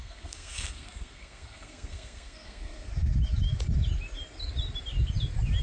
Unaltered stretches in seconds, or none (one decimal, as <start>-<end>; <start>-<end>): 2.9-5.6